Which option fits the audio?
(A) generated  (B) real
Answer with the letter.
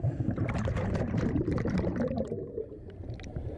A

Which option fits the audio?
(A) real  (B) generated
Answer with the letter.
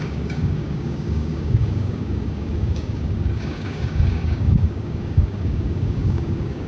B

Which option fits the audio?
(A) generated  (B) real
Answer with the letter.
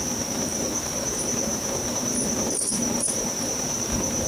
A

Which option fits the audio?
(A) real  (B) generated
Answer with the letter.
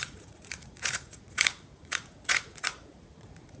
B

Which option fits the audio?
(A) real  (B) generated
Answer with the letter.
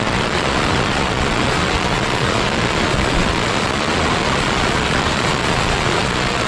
B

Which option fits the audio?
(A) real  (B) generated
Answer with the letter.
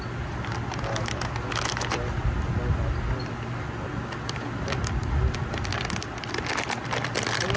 A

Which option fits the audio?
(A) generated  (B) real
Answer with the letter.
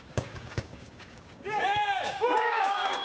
A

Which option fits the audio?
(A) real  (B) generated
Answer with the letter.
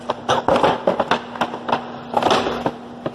A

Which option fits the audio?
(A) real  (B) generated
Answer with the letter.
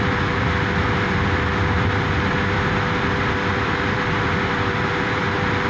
B